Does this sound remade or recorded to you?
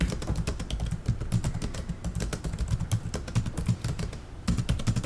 recorded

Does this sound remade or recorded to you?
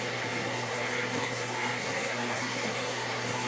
remade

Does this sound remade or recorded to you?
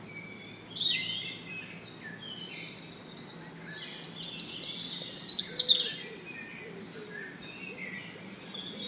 recorded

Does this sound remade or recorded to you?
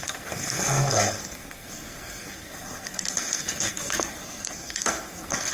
remade